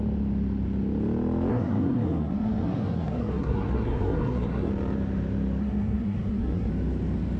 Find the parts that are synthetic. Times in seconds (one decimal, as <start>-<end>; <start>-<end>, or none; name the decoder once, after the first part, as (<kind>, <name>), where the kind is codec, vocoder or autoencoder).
1.5-4.7 (codec, SNAC); 5.6-6.7